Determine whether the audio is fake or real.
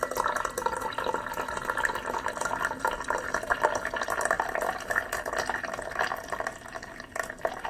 real